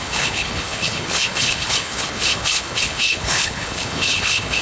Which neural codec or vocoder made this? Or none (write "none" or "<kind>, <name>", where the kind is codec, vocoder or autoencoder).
codec, HILCodec